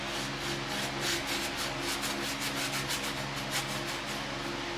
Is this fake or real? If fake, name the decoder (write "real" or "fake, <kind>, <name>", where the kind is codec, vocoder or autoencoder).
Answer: real